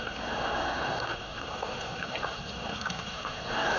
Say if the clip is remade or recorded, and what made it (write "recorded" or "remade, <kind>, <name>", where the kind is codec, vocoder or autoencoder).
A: remade, codec, SNAC